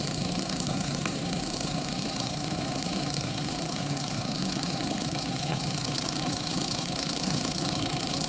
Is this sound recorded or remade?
remade